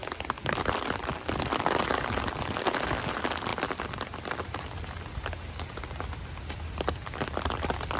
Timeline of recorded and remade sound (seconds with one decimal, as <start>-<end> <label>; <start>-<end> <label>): 0.0-8.0 recorded